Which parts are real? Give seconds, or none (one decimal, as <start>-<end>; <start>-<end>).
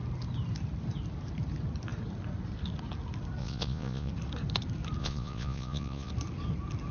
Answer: 0.0-3.4; 4.1-5.0; 6.1-6.9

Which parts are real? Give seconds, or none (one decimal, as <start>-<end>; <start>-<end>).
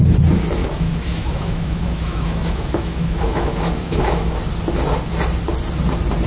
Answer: 0.0-0.6; 4.4-6.3